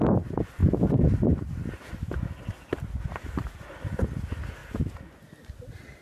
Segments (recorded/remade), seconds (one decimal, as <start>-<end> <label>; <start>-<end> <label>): 0.0-0.6 recorded; 0.6-1.9 remade; 1.9-6.0 recorded